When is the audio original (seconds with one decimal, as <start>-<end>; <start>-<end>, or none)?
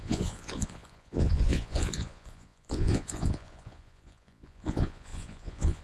none